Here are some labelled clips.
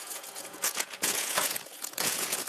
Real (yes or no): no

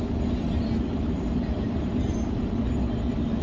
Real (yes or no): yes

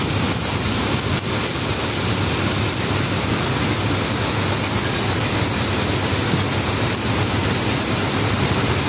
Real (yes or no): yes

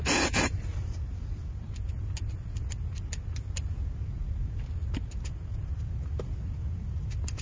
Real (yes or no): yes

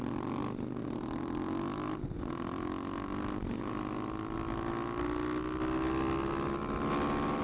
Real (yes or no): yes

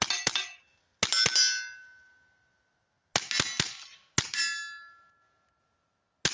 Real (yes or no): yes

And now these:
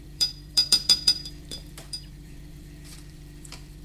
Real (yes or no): no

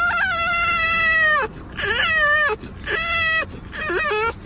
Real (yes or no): yes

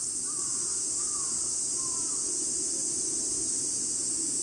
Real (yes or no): yes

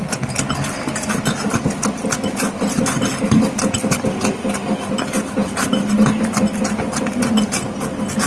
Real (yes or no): yes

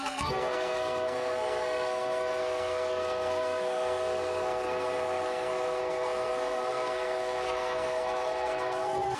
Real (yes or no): no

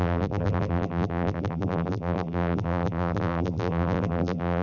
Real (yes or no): no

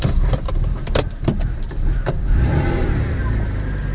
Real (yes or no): no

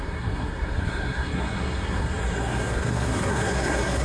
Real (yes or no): no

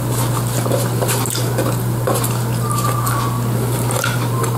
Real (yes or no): yes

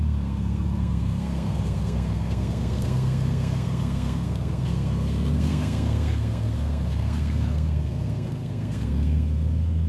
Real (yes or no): no